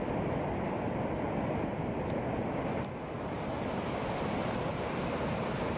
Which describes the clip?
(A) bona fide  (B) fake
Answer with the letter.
A